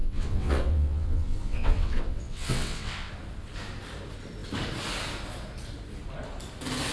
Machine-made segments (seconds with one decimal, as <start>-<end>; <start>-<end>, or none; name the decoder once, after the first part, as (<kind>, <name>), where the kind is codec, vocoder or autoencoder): 0.0-3.1 (vocoder, WaveNeXt)